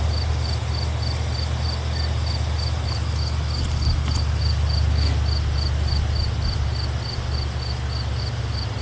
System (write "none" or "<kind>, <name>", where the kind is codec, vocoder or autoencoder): none